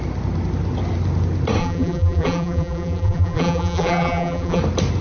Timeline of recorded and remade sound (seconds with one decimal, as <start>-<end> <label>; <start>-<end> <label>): 0.0-1.6 recorded; 1.6-4.6 remade; 4.6-5.0 recorded